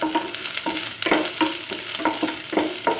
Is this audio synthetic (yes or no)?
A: no